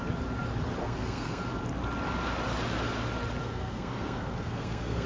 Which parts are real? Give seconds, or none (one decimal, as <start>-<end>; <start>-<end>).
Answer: 0.0-0.8; 1.4-3.4